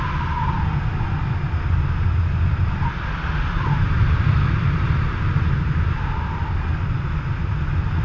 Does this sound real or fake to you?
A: real